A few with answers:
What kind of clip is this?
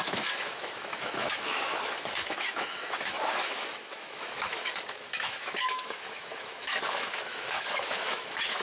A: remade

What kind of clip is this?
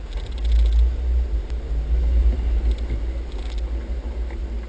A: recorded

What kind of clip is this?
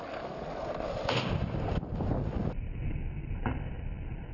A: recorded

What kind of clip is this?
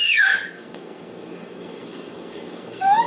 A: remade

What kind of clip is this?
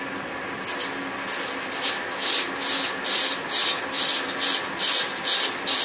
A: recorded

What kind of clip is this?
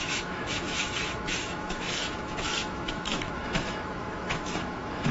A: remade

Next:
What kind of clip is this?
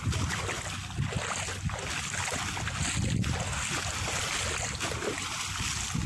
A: recorded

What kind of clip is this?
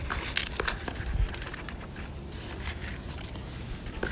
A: remade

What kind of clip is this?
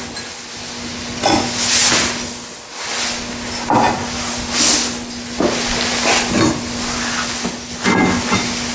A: recorded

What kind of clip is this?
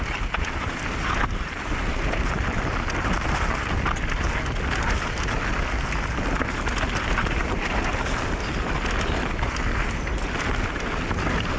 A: recorded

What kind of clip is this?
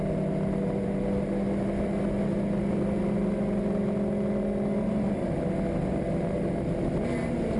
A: recorded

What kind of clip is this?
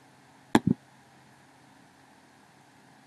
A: recorded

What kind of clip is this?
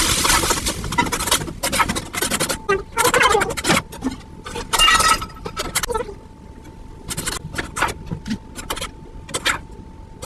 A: recorded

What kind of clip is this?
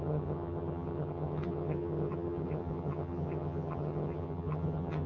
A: remade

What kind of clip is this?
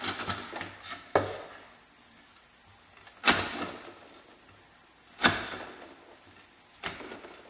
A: recorded